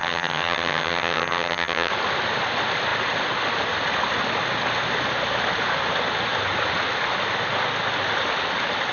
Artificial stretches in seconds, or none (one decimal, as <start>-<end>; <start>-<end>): 0.0-1.9

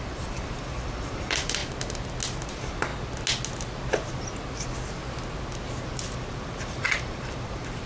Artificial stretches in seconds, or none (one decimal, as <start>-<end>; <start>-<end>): 0.0-1.6; 2.5-2.9; 6.3-7.9

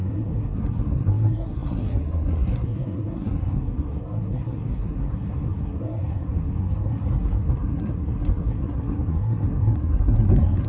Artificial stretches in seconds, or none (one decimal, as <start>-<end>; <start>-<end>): 0.0-10.7

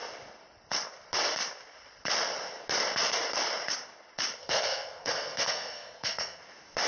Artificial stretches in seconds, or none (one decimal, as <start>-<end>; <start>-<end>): 4.4-6.4

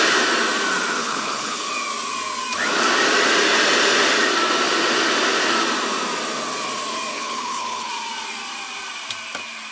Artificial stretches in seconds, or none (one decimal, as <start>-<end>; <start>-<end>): 1.0-1.7; 7.1-7.9

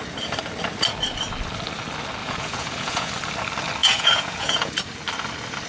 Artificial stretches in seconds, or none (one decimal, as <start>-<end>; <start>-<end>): 2.2-3.1; 3.8-4.7

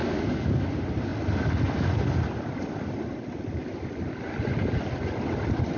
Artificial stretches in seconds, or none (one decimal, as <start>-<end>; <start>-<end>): 0.0-0.6

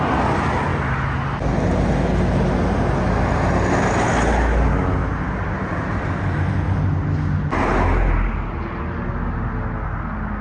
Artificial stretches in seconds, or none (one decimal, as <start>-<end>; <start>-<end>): none